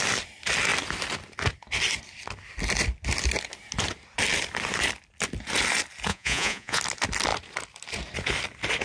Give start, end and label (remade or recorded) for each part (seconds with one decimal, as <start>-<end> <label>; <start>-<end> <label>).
0.0-6.1 recorded; 6.1-6.8 remade; 6.8-8.8 recorded